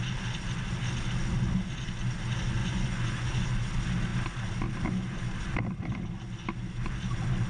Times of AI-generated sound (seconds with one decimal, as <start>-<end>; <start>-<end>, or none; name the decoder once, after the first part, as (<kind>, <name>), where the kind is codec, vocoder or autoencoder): 2.6-3.5 (vocoder, Vocos)